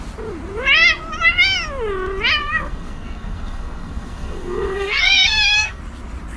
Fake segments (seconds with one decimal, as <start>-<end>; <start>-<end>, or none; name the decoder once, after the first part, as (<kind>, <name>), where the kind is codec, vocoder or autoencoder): 2.4-5.8 (codec, SNAC)